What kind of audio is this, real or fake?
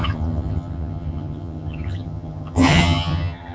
fake